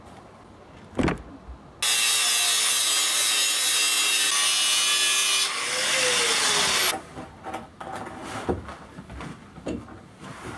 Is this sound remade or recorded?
recorded